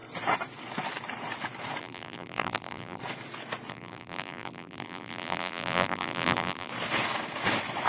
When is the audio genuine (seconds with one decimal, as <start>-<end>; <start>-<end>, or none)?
0.0-1.8; 3.0-3.7; 6.7-7.9